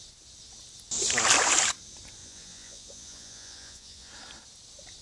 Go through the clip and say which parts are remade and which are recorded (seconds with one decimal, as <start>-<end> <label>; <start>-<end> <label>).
0.0-2.2 recorded; 2.2-4.1 remade; 4.1-5.0 recorded